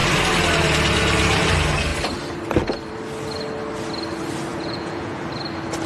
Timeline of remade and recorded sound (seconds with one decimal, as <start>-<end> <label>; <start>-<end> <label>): 0.0-4.5 recorded; 4.5-5.2 remade; 5.2-5.9 recorded

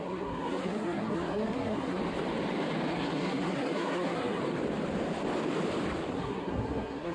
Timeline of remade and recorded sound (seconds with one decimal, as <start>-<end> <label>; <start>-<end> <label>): 0.0-2.0 remade; 2.0-2.9 recorded; 2.9-4.4 remade; 4.4-6.1 recorded; 6.1-7.1 remade